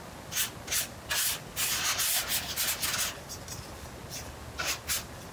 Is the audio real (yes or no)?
yes